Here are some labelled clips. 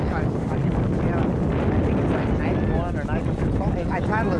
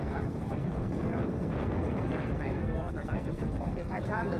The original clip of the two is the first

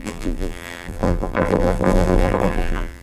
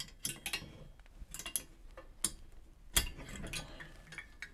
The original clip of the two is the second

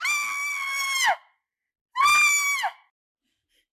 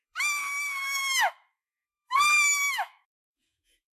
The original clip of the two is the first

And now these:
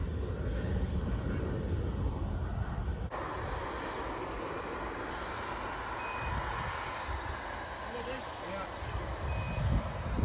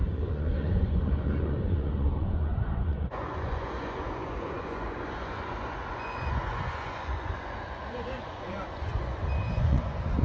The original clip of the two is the first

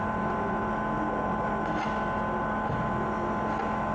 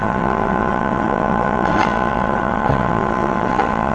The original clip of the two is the first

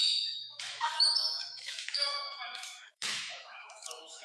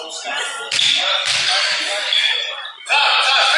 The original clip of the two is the second